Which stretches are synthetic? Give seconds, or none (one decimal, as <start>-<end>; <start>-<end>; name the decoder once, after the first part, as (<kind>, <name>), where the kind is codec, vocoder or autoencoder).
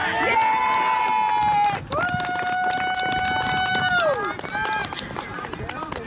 none